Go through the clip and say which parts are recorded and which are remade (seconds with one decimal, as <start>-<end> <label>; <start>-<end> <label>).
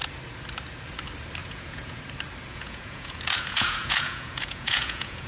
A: 0.0-1.4 recorded; 1.4-2.0 remade; 2.0-2.5 recorded; 2.5-5.3 remade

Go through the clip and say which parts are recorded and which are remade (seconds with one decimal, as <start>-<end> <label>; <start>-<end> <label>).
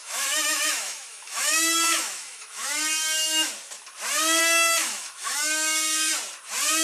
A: 0.0-3.5 remade; 3.5-4.4 recorded; 4.4-6.1 remade; 6.1-6.8 recorded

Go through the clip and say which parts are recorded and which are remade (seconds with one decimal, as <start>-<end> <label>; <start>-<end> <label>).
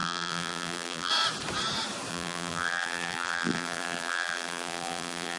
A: 0.0-1.1 remade; 1.1-2.1 recorded; 2.1-5.4 remade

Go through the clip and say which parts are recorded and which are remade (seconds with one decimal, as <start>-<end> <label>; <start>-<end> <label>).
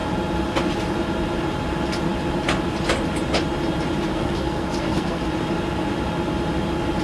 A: 0.0-4.1 recorded; 4.1-5.2 remade; 5.2-7.0 recorded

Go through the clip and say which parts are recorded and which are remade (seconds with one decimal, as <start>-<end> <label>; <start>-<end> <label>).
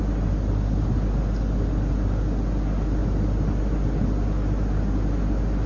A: 0.0-5.7 recorded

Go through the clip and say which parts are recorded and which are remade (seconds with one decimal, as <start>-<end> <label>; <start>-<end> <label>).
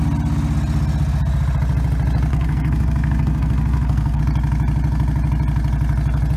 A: 0.0-2.3 recorded; 2.3-4.2 remade; 4.2-6.4 recorded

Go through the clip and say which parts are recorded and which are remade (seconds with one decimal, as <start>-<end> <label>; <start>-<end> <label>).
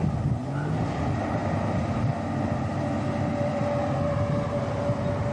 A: 0.0-5.3 recorded